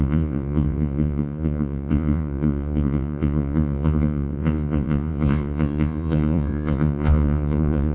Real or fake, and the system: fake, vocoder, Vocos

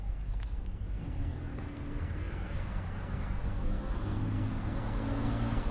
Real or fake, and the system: fake, codec, SNAC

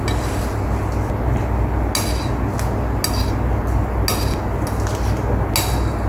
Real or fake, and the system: real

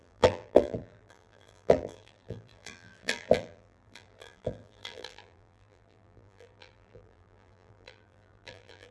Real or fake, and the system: fake, vocoder, BigVGAN v2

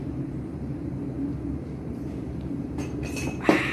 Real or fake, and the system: fake, vocoder, BigVGAN v2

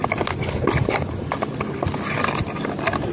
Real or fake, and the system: real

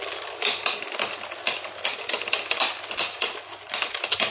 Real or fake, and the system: real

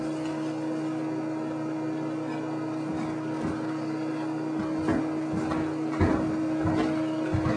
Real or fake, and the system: real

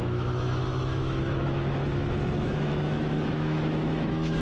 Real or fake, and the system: fake, autoencoder, DAC-VAE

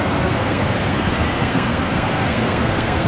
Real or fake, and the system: fake, codec, SNAC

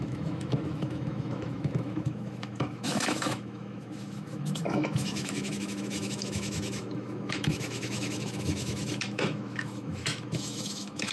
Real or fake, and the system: fake, autoencoder, DAC-VAE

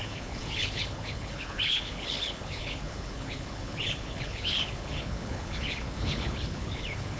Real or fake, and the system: fake, codec, HILCodec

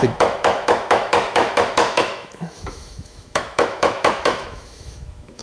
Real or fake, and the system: fake, autoencoder, DAC-VAE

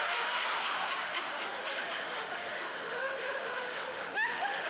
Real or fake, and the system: fake, autoencoder, DAC-VAE